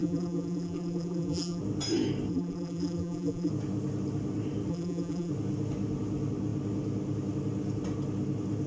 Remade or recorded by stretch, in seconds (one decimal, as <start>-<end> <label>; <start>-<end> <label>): 0.0-1.6 remade; 1.6-2.3 recorded; 2.3-3.5 remade; 3.5-4.7 recorded; 4.7-5.3 remade; 5.3-8.7 recorded